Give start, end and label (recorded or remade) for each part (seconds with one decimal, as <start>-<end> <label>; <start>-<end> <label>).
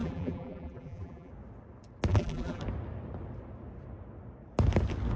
0.0-1.3 remade; 1.3-2.1 recorded; 2.1-2.6 remade; 2.6-5.2 recorded